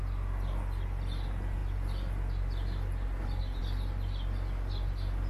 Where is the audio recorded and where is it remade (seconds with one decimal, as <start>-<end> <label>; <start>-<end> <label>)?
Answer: 0.0-5.3 recorded

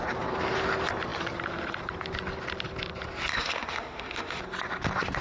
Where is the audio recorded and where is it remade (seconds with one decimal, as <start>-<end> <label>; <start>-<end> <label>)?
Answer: 0.0-3.3 recorded; 3.3-4.4 remade; 4.4-5.2 recorded

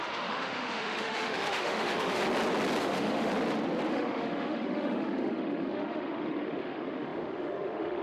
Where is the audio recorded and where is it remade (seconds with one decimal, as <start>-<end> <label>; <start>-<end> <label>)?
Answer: 0.0-2.2 remade; 2.2-2.8 recorded; 2.8-3.3 remade; 3.3-3.9 recorded; 3.9-8.0 remade

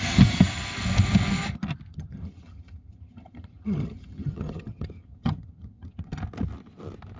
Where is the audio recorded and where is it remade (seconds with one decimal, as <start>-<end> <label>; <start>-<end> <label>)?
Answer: 0.0-1.9 recorded; 1.9-6.2 remade; 6.2-7.2 recorded